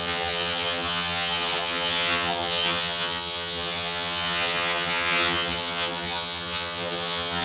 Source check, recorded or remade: remade